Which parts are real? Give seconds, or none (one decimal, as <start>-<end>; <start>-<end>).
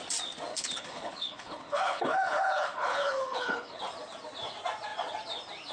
0.0-0.5; 3.8-5.7